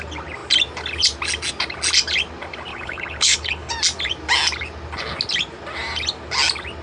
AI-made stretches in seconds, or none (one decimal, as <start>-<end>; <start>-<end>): 2.7-3.7